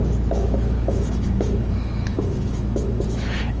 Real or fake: fake